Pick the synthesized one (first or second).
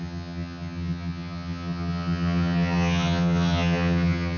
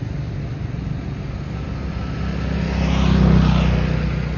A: first